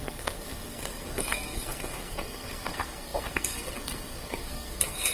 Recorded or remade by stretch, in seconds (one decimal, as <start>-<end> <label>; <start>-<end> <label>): 0.0-5.1 remade